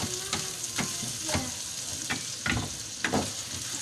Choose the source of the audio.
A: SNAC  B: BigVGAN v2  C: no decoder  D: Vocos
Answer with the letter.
C